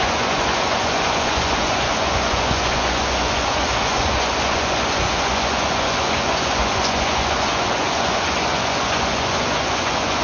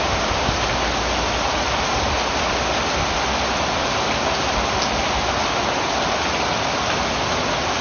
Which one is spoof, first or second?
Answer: first